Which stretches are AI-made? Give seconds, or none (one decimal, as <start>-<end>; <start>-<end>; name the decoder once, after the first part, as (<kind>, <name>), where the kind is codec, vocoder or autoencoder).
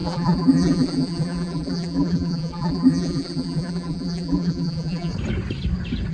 0.0-5.1 (vocoder, BigVGAN v2)